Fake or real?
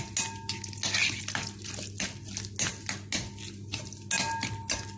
real